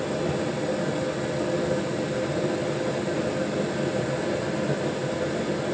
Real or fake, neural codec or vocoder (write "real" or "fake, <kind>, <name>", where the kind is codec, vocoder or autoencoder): real